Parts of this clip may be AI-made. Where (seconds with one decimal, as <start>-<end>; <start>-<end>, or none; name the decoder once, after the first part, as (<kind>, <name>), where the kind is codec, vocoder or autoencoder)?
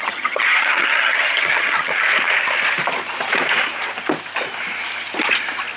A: 0.0-1.9 (vocoder, HiFi-GAN)